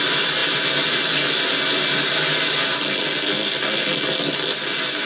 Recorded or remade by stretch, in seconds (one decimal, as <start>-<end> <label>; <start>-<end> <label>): 0.0-5.1 recorded